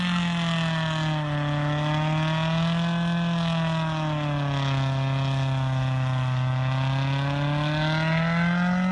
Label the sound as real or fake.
real